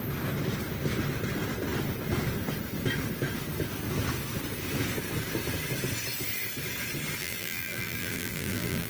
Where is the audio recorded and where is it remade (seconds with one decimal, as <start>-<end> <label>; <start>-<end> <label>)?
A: 0.0-7.2 recorded; 7.2-8.9 remade